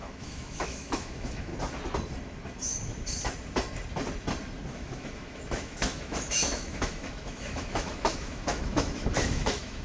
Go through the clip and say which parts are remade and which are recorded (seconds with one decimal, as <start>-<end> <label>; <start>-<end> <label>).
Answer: 0.0-1.5 remade; 1.5-4.7 recorded; 4.7-9.8 remade